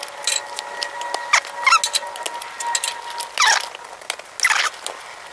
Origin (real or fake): real